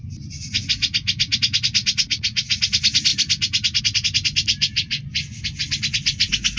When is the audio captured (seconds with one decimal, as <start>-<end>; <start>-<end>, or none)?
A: 0.0-1.8; 2.6-6.6